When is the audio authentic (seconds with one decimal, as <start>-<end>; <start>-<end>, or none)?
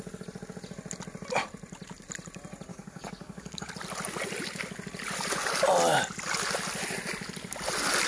0.0-2.7; 3.7-8.1